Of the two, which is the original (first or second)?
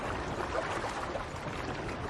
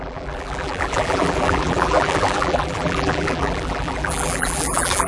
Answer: first